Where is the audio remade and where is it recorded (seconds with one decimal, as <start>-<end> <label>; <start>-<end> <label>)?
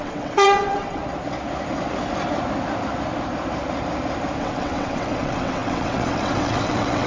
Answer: 0.0-1.0 remade; 1.0-4.4 recorded; 4.4-7.1 remade